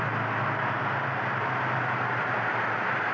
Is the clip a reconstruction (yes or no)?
no